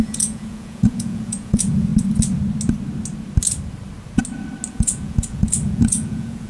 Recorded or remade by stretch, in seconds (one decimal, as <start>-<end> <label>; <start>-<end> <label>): 0.0-1.9 remade; 1.9-4.7 recorded; 4.7-6.5 remade